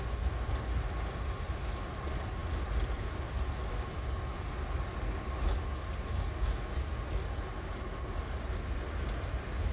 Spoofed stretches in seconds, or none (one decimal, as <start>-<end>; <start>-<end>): none